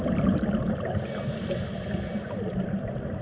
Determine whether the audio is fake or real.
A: real